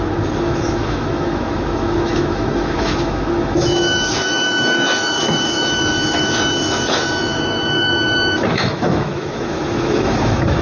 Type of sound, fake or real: fake